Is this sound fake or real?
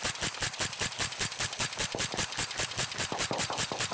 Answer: real